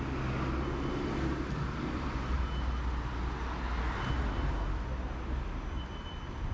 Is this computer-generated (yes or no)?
no